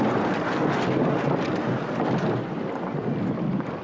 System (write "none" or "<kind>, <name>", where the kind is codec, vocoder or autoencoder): none